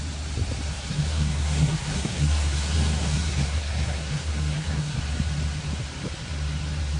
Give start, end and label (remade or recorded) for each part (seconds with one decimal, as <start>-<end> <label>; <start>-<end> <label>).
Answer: 0.0-0.9 recorded; 0.9-5.0 remade; 5.0-7.0 recorded